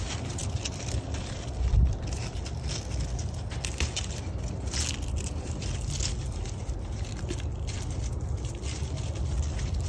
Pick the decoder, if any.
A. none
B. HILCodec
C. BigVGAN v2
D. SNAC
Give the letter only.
A